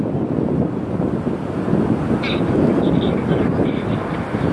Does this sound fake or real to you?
real